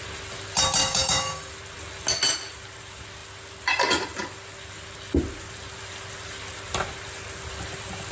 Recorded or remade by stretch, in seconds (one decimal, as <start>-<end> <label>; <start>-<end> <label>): 0.0-0.8 recorded; 0.8-1.5 remade; 1.5-8.1 recorded